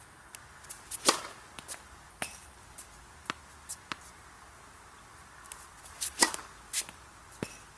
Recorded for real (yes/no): yes